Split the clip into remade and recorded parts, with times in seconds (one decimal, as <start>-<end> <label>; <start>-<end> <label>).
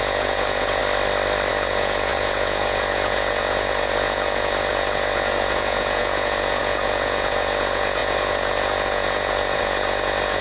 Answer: 0.0-0.8 remade; 0.8-1.5 recorded; 1.5-10.4 remade